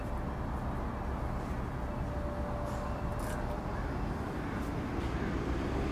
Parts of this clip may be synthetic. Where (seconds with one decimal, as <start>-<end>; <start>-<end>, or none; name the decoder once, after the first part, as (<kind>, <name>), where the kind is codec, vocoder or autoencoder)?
none